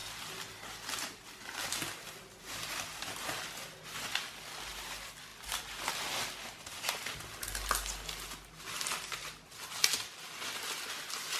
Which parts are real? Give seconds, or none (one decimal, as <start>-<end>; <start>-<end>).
1.7-11.4